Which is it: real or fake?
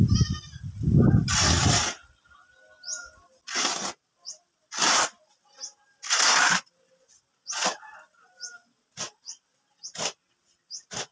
real